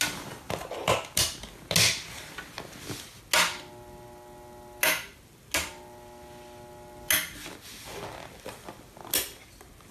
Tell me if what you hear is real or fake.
real